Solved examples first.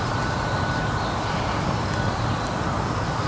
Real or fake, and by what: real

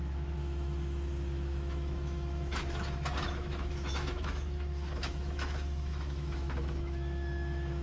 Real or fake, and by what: fake, autoencoder, DAC-VAE